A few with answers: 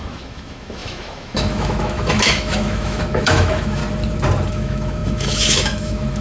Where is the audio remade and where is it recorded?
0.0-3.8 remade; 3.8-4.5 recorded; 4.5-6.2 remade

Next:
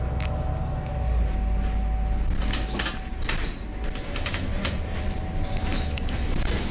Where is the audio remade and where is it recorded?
0.0-0.5 remade; 0.5-4.0 recorded; 4.0-4.5 remade; 4.5-5.5 recorded; 5.5-6.7 remade

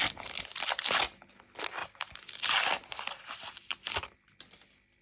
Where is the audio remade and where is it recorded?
0.0-1.8 recorded; 1.8-5.0 remade

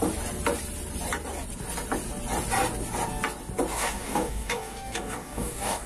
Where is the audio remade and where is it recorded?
0.0-3.7 recorded; 3.7-5.9 remade

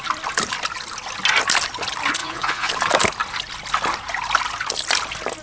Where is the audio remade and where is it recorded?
0.0-2.2 recorded; 2.2-2.7 remade; 2.7-5.4 recorded

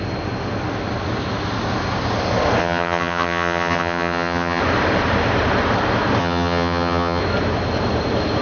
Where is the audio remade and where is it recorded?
0.0-2.6 recorded; 2.6-4.6 remade; 4.6-6.2 recorded; 6.2-7.2 remade; 7.2-8.4 recorded

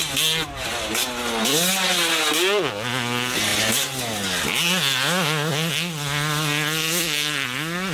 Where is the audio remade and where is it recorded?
0.0-7.9 recorded

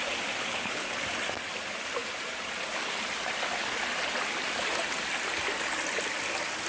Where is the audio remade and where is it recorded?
0.0-0.5 recorded; 0.5-1.0 remade; 1.0-6.7 recorded